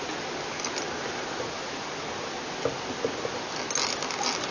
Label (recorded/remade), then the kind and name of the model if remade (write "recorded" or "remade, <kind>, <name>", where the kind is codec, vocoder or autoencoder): recorded